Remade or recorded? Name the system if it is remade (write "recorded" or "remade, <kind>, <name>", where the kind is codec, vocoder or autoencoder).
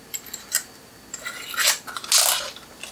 recorded